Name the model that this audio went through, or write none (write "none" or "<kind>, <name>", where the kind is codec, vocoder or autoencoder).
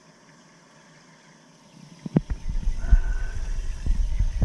none